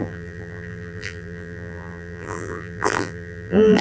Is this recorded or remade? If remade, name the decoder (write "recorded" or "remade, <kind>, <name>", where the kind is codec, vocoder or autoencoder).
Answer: remade, vocoder, BigVGAN v2